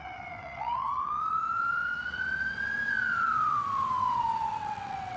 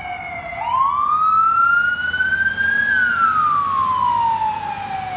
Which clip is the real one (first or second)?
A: second